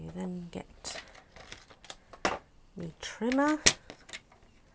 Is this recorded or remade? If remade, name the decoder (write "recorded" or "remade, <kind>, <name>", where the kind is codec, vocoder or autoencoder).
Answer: recorded